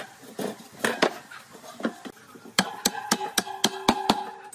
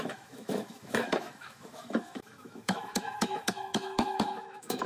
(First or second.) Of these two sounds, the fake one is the second